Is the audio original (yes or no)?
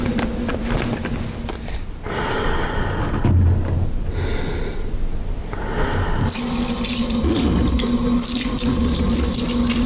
yes